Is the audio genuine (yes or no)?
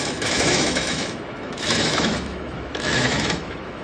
no